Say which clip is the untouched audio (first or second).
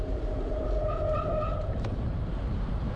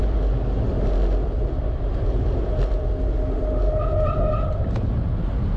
second